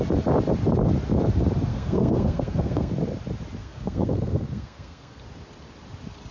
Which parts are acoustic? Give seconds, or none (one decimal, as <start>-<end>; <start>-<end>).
0.0-1.7; 2.9-3.6; 5.2-6.3

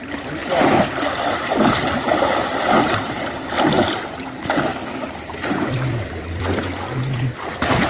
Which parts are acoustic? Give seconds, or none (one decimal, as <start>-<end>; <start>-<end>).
none

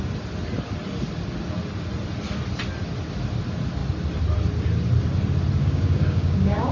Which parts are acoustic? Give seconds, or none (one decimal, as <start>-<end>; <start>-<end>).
0.0-5.6

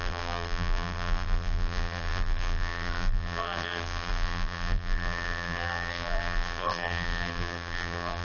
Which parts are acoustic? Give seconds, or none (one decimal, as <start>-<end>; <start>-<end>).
none

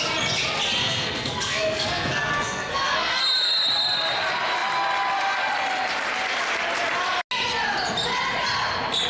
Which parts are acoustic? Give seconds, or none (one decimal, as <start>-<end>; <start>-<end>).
0.0-0.8; 3.2-9.1

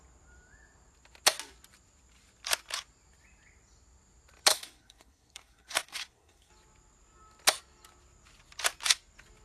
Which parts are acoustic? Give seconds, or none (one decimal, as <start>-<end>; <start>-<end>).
0.0-4.5; 6.5-9.4

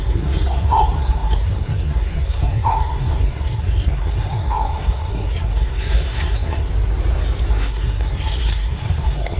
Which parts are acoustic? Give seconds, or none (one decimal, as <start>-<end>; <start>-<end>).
6.7-7.5

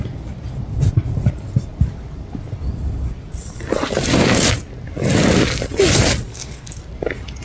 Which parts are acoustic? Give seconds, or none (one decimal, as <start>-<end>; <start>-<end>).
0.0-6.3; 6.8-7.4